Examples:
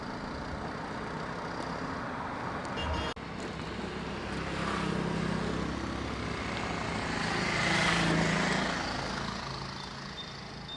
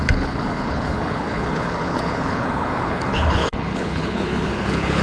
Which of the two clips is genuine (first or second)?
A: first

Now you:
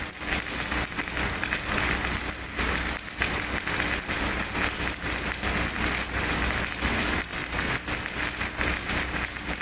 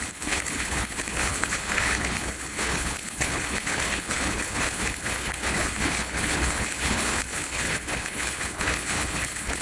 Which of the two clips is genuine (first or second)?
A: first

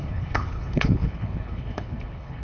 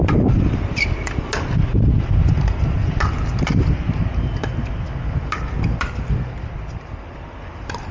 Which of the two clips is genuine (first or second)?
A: second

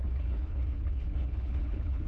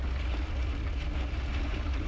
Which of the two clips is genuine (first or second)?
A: second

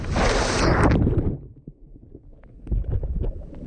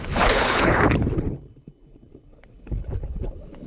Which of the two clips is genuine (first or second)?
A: first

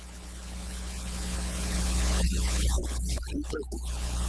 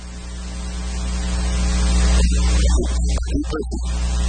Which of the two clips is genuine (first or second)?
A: second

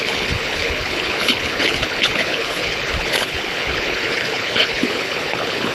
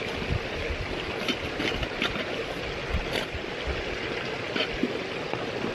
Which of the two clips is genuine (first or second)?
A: second